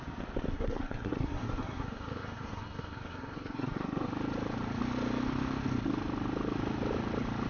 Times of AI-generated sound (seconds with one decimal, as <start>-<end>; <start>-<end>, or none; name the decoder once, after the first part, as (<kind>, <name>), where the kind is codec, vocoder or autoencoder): 0.5-4.1 (codec, SNAC)